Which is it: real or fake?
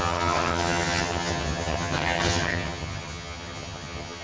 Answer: fake